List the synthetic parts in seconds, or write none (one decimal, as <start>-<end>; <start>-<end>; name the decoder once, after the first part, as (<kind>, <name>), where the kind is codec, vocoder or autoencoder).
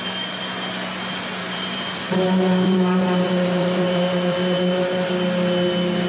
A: 1.4-5.1 (vocoder, BigVGAN v2)